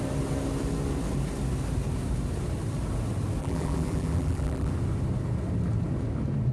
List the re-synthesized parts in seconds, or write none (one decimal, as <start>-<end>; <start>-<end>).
3.4-4.7